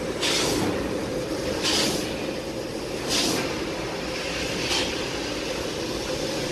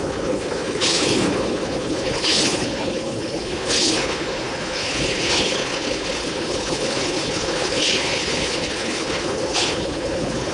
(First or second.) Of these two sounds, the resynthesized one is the second